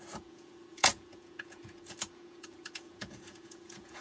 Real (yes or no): no